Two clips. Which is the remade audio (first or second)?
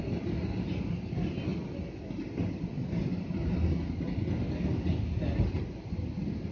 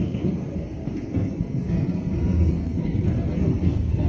second